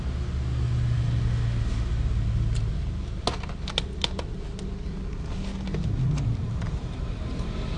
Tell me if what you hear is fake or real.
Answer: real